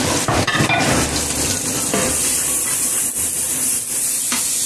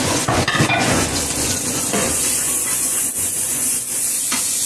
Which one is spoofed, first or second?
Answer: second